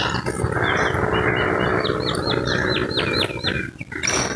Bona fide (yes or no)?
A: yes